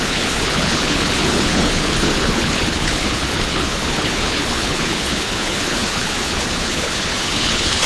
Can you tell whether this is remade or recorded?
remade